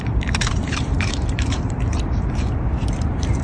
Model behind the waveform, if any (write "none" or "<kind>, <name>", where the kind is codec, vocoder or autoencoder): vocoder, BigVGAN v2